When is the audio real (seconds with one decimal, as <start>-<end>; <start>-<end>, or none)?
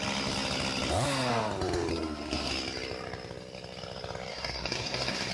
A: 0.0-1.9; 2.5-4.3